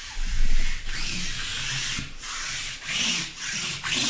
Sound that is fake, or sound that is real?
real